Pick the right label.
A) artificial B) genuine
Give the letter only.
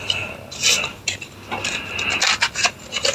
B